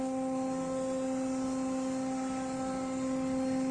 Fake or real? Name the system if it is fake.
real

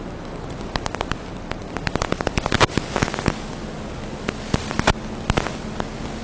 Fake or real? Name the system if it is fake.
real